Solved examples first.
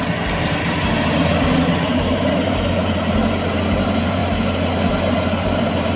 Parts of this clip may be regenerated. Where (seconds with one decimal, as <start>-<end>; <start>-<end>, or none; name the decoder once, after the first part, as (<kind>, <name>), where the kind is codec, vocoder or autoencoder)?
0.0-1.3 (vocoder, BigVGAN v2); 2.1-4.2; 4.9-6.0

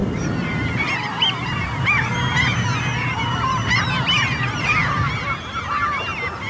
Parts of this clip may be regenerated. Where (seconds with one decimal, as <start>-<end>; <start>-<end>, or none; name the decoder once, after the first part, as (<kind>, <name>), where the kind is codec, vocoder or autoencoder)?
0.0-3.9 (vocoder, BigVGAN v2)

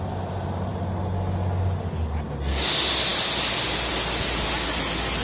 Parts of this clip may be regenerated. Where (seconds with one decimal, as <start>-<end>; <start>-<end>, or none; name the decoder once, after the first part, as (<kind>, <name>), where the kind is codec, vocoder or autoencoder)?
none

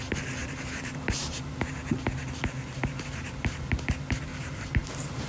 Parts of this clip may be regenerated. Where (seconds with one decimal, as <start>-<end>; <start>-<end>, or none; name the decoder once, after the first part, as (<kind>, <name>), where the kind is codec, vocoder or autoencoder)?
0.4-1.7 (vocoder, BigVGAN v2); 4.3-5.3